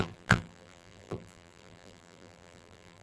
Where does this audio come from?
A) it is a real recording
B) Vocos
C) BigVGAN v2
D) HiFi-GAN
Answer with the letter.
C